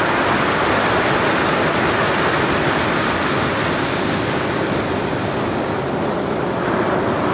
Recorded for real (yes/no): yes